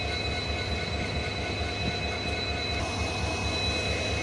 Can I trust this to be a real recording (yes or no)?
yes